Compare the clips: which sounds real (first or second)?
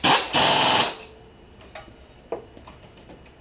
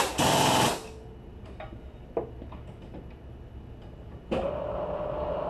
second